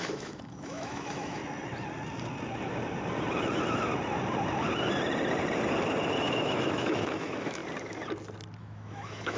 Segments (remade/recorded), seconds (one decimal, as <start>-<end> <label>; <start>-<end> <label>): 0.0-1.4 remade; 1.4-6.2 recorded; 6.2-7.6 remade; 7.6-8.6 recorded; 8.6-9.4 remade